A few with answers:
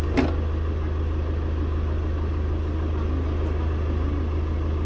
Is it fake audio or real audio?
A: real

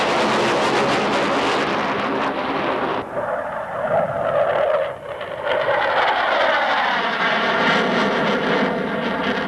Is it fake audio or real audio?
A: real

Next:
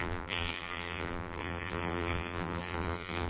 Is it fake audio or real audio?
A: fake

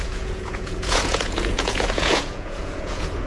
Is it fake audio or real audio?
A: fake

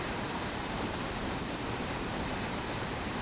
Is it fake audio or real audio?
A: fake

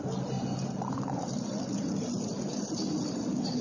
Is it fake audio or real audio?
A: fake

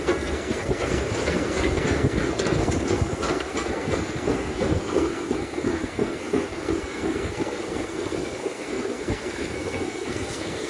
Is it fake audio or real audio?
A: fake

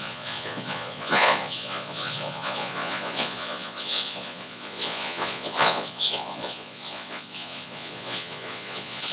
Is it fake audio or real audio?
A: fake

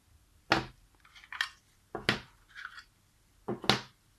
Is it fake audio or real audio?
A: real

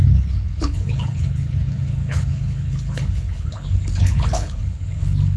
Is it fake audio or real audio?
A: fake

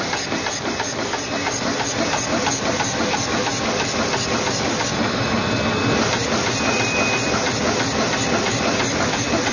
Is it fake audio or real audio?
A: real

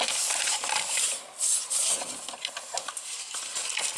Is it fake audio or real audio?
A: real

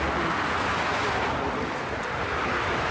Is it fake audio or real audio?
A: real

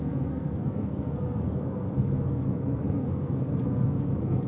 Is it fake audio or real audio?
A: fake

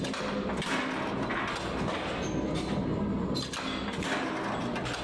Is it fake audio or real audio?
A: real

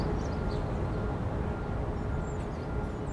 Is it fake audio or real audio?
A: real